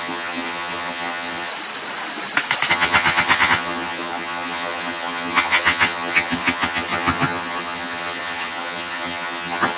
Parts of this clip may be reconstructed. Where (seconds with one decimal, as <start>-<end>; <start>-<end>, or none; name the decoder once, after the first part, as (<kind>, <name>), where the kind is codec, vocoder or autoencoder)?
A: 0.0-1.5 (vocoder, HiFi-GAN); 2.7-9.8